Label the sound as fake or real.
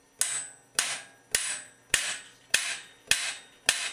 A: real